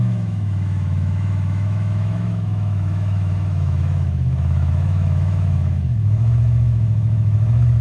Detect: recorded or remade remade